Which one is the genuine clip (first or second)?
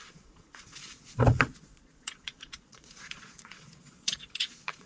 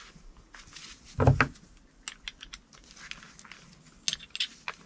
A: second